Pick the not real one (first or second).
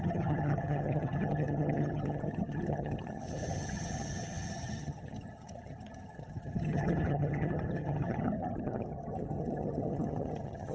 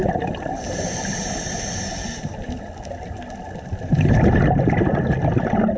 first